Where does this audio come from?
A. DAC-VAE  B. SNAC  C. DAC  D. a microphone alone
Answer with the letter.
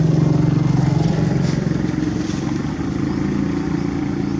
D